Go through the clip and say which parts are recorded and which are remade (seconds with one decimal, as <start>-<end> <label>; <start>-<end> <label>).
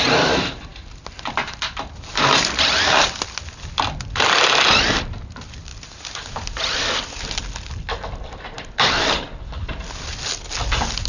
0.0-11.1 recorded